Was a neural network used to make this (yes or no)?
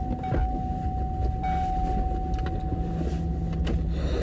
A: no